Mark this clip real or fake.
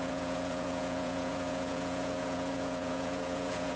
fake